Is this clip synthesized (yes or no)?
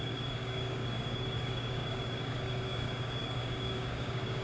yes